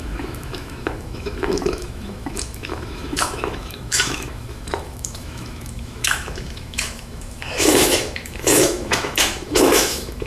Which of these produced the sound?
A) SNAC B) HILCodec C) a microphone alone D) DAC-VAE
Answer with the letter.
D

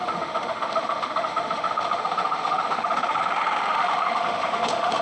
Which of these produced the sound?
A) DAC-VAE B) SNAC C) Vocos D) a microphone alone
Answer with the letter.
A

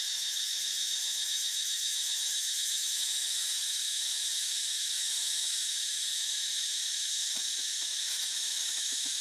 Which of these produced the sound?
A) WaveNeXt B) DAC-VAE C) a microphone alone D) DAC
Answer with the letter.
B